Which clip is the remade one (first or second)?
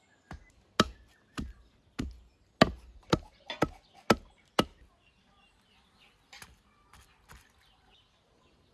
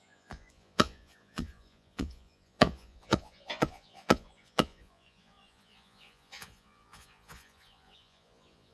second